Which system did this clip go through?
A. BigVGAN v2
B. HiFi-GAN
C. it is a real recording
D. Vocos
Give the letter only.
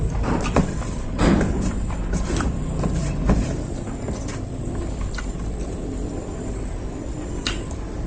A